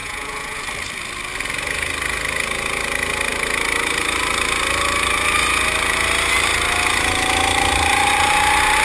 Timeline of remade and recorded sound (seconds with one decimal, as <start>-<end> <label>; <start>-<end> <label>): 0.0-0.6 remade; 0.6-8.8 recorded